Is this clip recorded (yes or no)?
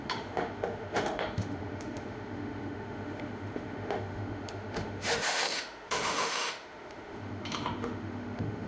no